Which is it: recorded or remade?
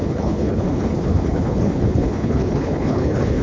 remade